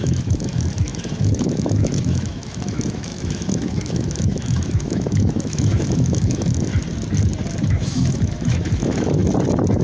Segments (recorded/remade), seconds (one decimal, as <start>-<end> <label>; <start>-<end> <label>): 0.0-6.7 remade; 6.7-7.7 recorded; 7.7-9.2 remade; 9.2-9.8 recorded